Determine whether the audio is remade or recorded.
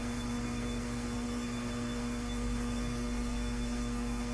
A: remade